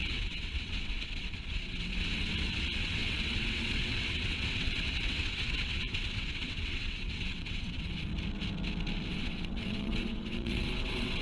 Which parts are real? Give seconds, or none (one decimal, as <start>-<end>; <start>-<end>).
8.1-9.1